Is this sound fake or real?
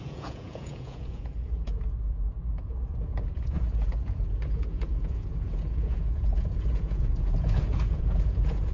fake